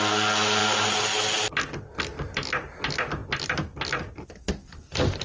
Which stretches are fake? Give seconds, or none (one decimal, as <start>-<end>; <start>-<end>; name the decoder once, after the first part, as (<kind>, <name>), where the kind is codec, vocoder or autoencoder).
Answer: none

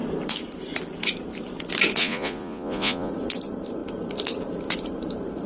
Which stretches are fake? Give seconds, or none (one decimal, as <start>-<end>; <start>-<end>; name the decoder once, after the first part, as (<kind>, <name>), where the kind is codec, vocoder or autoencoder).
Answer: 2.0-3.1 (vocoder, Vocos)

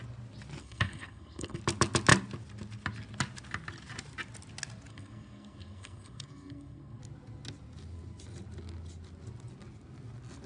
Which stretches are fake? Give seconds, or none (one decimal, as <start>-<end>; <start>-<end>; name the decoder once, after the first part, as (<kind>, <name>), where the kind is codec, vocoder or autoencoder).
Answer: 0.6-1.6 (codec, SNAC); 4.9-7.0

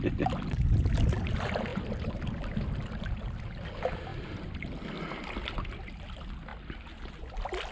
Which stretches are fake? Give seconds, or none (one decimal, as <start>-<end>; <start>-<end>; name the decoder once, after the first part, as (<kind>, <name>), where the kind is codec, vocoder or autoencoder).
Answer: none

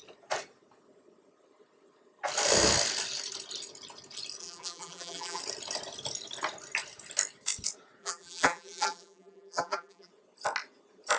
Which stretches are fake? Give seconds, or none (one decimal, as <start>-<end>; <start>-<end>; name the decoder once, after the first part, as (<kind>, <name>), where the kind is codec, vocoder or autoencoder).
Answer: 4.4-5.4 (vocoder, BigVGAN v2); 8.0-10.1

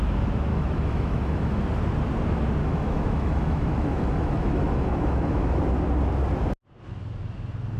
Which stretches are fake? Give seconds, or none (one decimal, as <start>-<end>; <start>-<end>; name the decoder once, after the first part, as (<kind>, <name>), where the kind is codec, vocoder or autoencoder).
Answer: 0.5-1.6 (autoencoder, DAC-VAE); 2.6-5.6

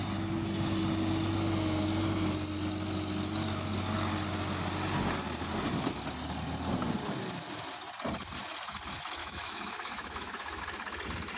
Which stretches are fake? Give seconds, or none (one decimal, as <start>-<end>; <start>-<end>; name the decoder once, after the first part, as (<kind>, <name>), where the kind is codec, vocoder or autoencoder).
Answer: 9.2-10.6 (autoencoder, DAC-VAE)

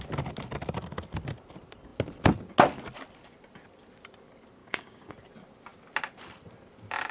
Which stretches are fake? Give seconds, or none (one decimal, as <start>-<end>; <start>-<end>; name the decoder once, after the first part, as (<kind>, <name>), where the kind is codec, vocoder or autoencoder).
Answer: 4.6-5.1 (codec, DAC)